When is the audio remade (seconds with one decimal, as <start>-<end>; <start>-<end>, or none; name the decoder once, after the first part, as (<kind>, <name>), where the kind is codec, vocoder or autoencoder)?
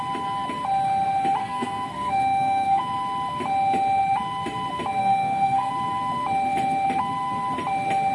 1.4-2.8 (codec, SNAC); 5.0-5.7